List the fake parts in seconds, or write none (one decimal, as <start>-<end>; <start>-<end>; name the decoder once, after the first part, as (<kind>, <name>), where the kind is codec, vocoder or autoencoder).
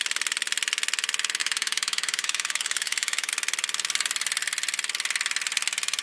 1.4-3.3 (autoencoder, DAC-VAE)